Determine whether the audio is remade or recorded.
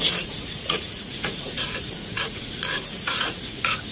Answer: remade